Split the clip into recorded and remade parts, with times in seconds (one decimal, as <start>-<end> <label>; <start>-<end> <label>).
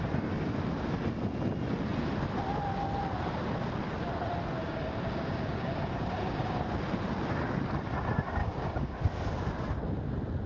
0.0-4.6 recorded; 4.6-6.6 remade; 6.6-8.4 recorded; 8.4-9.0 remade; 9.0-10.5 recorded